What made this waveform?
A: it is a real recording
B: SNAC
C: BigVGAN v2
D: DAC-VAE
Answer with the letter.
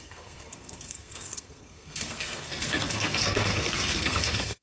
B